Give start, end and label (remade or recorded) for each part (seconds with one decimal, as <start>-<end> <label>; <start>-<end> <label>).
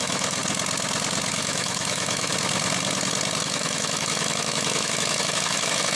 0.0-0.4 remade; 0.4-1.3 recorded; 1.3-2.3 remade; 2.3-3.4 recorded; 3.4-6.0 remade